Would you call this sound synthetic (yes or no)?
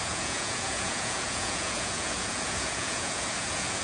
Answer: yes